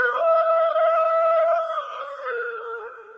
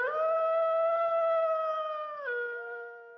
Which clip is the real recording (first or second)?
second